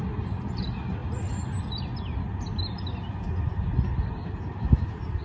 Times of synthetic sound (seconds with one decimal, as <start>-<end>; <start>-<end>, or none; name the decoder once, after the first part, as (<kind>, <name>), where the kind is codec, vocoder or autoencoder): none